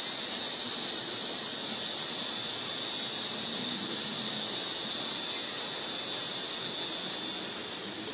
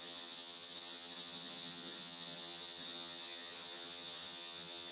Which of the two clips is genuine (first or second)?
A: first